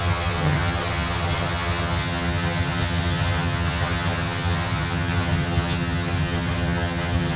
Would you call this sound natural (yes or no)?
no